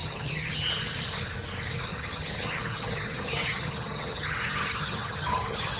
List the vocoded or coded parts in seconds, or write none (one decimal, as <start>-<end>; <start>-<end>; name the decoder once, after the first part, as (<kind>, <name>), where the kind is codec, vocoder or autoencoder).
0.0-0.7 (vocoder, HiFi-GAN); 1.9-5.8